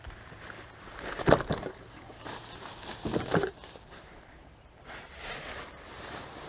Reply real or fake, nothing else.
fake